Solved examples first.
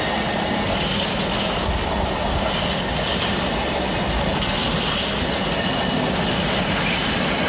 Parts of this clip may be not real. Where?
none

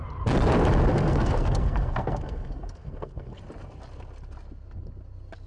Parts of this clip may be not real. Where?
0.9-3.4 (codec, SNAC)

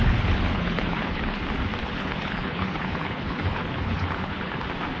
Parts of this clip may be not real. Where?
0.0-1.4 (codec, HILCodec); 1.8-4.6

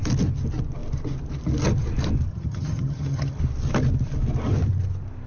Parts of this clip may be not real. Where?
2.3-3.4 (vocoder, HiFi-GAN)

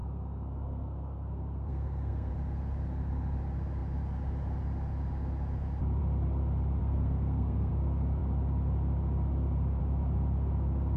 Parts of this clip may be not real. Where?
0.0-2.3 (codec, SNAC); 6.8-7.7

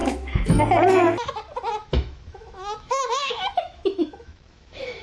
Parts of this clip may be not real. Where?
0.0-0.6 (autoencoder, DAC-VAE); 1.8-5.0

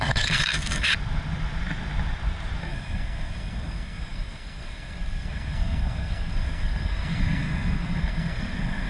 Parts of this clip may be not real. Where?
0.0-0.9 (codec, SNAC); 2.6-8.9

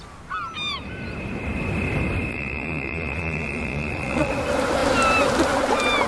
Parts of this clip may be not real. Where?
2.3-4.3 (vocoder, Vocos)